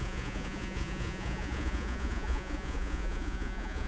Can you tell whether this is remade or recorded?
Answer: remade